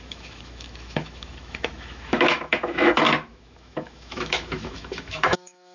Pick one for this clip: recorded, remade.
remade